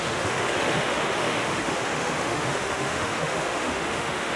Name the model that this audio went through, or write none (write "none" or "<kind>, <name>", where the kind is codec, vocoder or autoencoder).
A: autoencoder, DAC-VAE